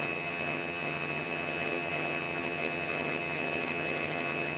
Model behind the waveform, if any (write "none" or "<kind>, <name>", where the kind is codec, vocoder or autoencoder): vocoder, HiFi-GAN